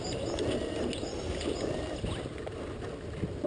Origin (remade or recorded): recorded